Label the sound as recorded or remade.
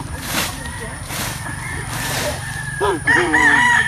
remade